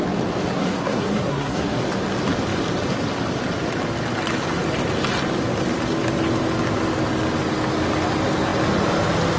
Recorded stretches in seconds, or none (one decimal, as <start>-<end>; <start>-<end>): 0.0-0.5; 1.8-9.4